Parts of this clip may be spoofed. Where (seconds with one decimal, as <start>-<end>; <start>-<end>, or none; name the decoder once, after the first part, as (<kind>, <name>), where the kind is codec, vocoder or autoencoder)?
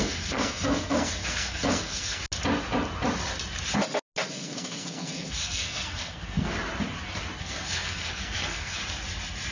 0.0-2.2 (codec, SNAC); 4.3-6.5; 7.4-8.8